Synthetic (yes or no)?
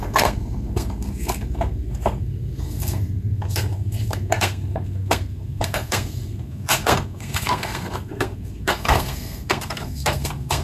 yes